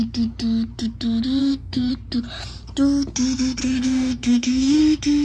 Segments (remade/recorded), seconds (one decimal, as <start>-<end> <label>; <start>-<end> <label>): 0.0-1.4 recorded; 1.4-1.9 remade; 1.9-3.6 recorded; 3.6-4.8 remade; 4.8-5.2 recorded